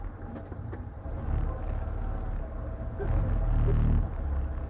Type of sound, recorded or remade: recorded